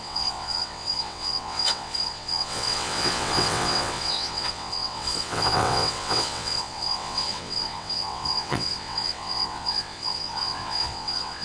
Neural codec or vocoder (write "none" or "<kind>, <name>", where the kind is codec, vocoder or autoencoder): vocoder, WaveNeXt